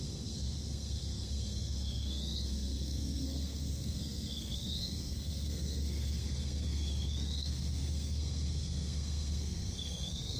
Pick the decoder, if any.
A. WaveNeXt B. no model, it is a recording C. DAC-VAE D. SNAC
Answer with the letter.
D